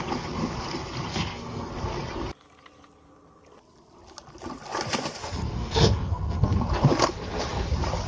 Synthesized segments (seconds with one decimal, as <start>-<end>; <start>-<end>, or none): 1.1-1.7; 5.2-6.6